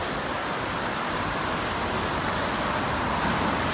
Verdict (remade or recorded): recorded